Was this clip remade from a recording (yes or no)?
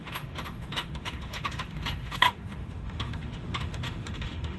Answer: yes